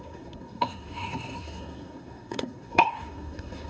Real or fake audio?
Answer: fake